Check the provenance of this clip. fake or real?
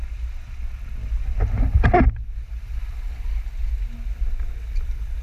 real